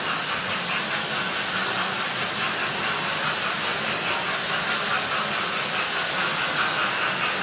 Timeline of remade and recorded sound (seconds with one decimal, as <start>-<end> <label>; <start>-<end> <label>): 0.0-7.4 recorded